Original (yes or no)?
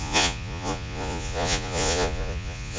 no